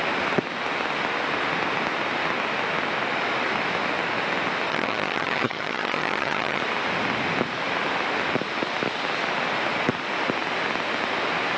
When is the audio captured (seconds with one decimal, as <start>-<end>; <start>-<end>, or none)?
0.0-4.7; 6.6-11.6